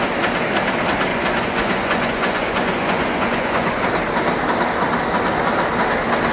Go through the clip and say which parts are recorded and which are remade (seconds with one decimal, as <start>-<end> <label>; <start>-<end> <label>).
0.0-1.1 recorded; 1.1-3.8 remade; 3.8-6.3 recorded